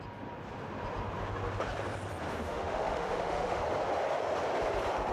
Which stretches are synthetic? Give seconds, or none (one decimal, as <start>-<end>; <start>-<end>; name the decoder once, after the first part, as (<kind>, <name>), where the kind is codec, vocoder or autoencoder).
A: 2.3-3.6 (autoencoder, DAC-VAE)